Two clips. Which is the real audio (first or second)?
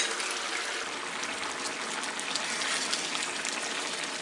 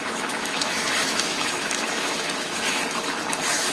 first